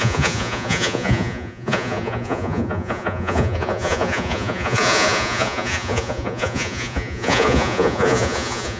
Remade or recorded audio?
remade